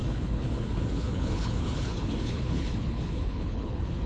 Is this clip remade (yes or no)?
yes